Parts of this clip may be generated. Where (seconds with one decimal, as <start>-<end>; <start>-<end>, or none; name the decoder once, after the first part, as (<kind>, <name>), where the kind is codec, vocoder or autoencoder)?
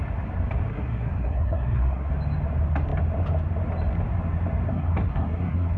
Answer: 0.7-2.1 (codec, SNAC); 4.7-5.8